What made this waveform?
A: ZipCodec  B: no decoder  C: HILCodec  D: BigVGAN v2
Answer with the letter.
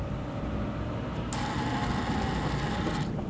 B